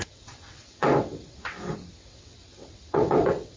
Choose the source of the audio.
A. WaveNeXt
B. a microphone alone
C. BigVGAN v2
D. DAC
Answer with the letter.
A